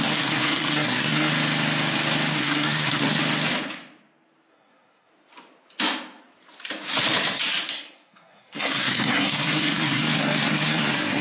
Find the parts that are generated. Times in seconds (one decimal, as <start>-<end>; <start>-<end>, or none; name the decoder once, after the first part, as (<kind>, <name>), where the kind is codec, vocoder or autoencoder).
0.0-1.3 (codec, SNAC); 2.3-3.2; 4.5-5.1; 7.7-11.2